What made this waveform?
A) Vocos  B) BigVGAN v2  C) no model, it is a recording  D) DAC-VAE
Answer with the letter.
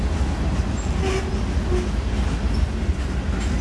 C